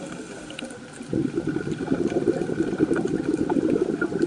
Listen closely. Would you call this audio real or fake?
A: real